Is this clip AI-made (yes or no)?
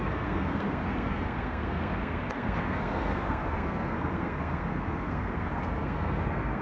yes